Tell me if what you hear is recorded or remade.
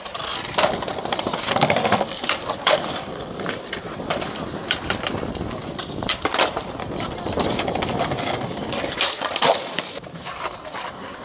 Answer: remade